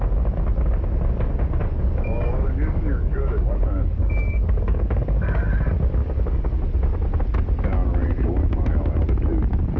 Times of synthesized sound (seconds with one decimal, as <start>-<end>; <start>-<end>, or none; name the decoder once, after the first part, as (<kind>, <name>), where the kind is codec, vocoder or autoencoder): 1.6-5.6 (codec, DAC); 6.0-6.6